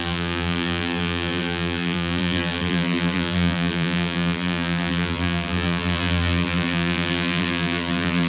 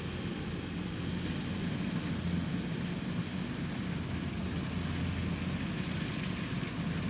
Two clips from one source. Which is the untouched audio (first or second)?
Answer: second